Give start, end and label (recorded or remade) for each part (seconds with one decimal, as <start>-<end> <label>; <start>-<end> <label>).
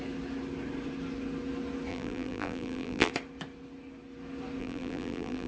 0.0-1.9 recorded; 1.9-3.1 remade; 3.1-4.6 recorded; 4.6-5.5 remade